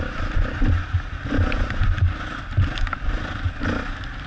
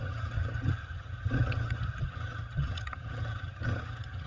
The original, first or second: first